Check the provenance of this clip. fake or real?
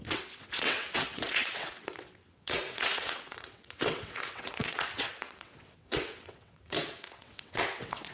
fake